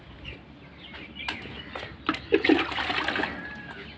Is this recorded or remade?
recorded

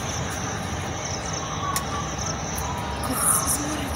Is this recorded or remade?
recorded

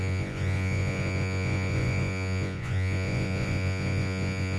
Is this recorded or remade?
remade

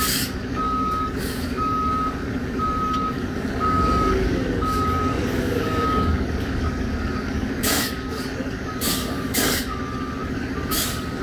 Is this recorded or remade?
remade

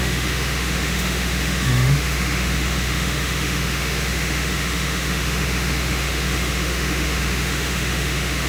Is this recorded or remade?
remade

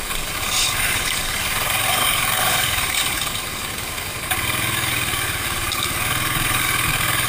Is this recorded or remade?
remade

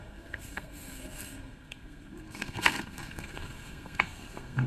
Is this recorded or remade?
remade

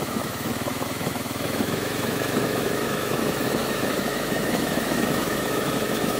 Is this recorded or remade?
remade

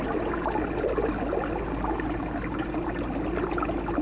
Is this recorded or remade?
recorded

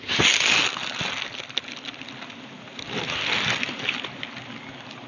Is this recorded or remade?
recorded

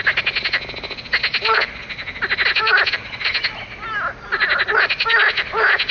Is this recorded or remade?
recorded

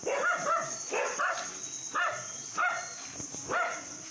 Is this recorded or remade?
recorded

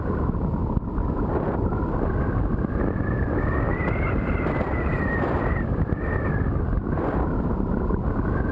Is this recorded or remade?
recorded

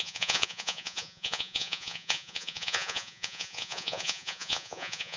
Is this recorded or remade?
remade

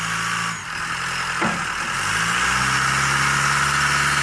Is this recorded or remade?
recorded